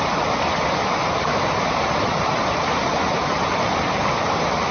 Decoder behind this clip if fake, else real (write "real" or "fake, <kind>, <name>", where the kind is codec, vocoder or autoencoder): real